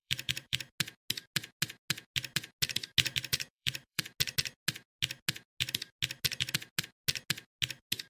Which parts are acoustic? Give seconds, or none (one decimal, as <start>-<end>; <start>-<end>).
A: 0.6-3.3; 4.0-8.1